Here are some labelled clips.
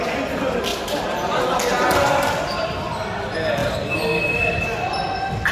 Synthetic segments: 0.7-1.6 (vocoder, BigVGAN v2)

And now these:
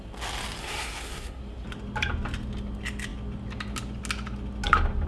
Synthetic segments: 0.6-1.4 (codec, SNAC)

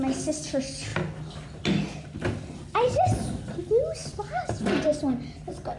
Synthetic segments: 4.0-5.0 (vocoder, BigVGAN v2)

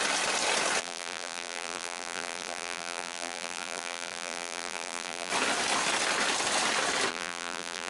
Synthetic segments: 0.8-5.3 (vocoder, BigVGAN v2); 7.1-7.9

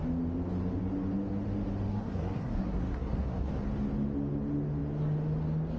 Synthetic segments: 1.9-3.5 (codec, SNAC)

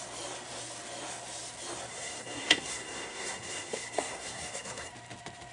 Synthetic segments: 1.9-4.9 (codec, SNAC)

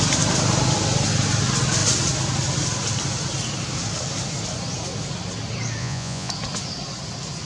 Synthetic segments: 5.8-6.3 (vocoder, Vocos)

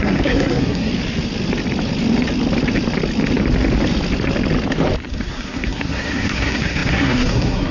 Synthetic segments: 0.0-0.9 (codec, SNAC); 5.1-7.7